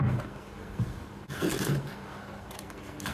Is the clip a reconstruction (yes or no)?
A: yes